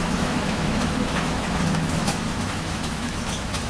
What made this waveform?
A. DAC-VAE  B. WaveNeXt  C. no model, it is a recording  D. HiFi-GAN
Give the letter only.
A